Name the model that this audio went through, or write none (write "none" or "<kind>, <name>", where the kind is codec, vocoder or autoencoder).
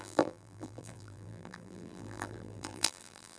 vocoder, BigVGAN v2